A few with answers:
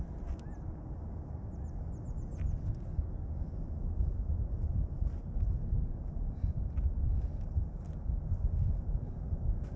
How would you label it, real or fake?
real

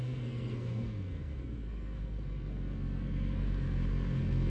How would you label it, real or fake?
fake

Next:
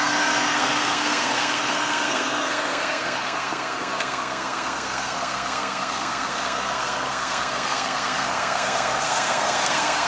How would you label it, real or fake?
fake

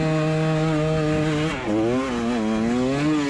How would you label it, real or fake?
real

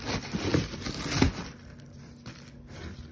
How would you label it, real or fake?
real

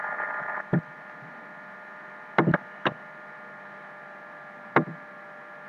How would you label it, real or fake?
real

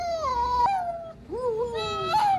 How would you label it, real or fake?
real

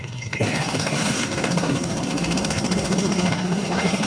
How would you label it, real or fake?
fake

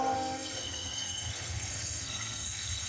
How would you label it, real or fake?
fake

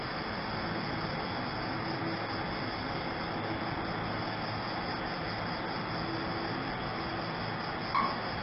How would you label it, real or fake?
real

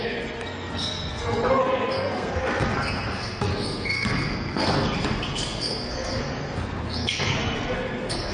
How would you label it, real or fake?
fake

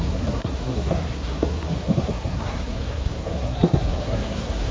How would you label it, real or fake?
fake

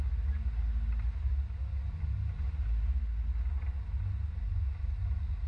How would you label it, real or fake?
real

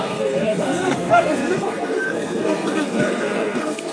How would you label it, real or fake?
fake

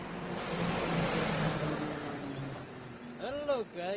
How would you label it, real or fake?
real